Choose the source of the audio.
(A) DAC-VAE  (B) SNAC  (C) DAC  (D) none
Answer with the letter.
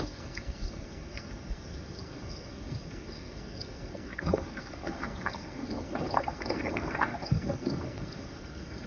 B